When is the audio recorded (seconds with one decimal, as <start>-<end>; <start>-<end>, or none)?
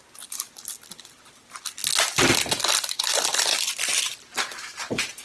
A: 0.0-5.2